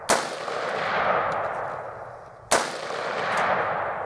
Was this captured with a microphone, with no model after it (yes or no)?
yes